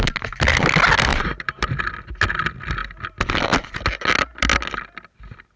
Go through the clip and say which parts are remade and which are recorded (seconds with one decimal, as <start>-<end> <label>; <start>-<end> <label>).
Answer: 0.0-1.1 recorded; 1.1-1.8 remade; 1.8-5.6 recorded